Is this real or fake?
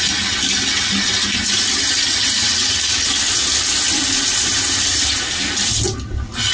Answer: real